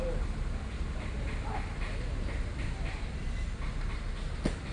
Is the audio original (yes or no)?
yes